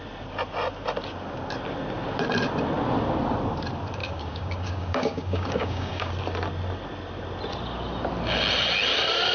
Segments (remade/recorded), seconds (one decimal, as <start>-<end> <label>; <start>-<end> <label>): 0.0-4.0 recorded; 4.0-6.1 remade; 6.1-9.3 recorded